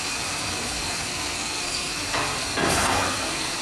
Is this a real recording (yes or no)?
no